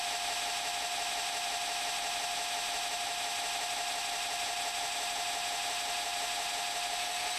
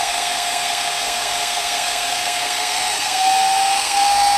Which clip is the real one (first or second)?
first